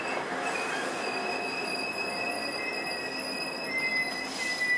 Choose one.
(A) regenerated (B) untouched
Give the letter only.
B